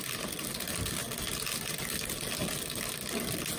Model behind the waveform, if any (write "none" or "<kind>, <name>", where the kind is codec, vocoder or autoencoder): none